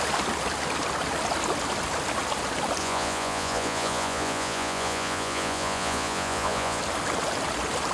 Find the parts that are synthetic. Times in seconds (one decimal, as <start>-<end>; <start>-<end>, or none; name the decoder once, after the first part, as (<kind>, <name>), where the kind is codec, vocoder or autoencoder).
2.8-6.8 (vocoder, Vocos)